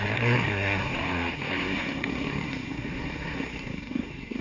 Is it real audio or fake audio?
fake